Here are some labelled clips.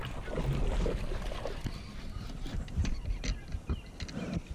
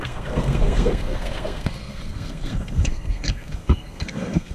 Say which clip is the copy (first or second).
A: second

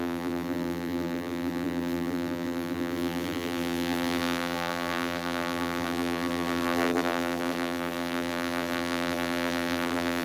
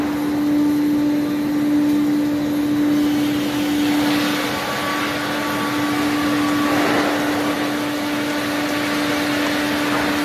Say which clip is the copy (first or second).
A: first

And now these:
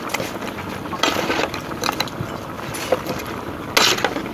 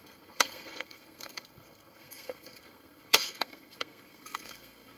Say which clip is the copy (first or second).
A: second